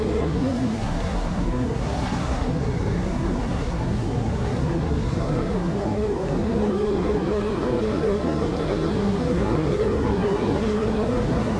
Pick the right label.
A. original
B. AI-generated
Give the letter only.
B